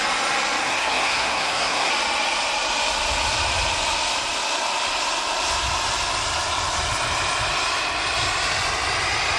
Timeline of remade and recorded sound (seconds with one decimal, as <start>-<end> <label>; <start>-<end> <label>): 0.0-0.6 recorded; 0.6-1.9 remade; 1.9-9.4 recorded